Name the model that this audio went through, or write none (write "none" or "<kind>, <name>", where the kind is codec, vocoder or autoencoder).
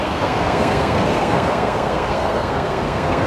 codec, SNAC